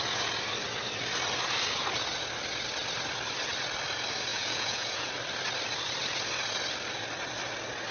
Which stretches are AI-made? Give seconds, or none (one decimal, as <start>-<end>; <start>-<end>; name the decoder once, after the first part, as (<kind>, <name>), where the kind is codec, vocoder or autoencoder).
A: 4.3-5.1 (vocoder, Vocos)